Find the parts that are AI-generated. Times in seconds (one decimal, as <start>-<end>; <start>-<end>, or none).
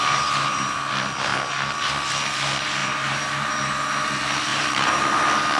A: 2.8-3.7; 4.5-5.0